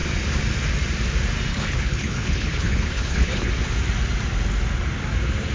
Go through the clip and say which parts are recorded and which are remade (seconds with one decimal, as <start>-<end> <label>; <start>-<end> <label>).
0.0-1.5 recorded; 1.5-3.5 remade; 3.5-5.5 recorded

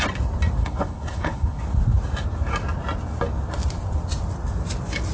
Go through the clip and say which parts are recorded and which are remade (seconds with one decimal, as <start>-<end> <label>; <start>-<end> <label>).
0.0-0.6 recorded; 0.6-1.6 remade; 1.6-5.1 recorded

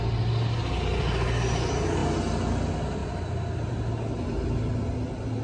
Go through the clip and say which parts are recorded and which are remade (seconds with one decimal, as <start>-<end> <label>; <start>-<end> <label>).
0.0-5.4 recorded